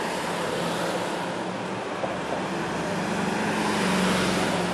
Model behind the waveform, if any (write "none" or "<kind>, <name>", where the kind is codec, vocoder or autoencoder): none